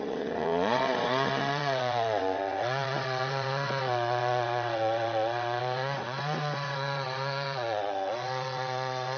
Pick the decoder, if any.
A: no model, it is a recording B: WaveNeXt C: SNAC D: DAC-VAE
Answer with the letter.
B